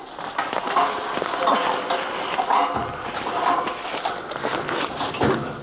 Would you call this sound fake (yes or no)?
no